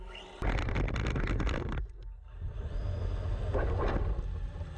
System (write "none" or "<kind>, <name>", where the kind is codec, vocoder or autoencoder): none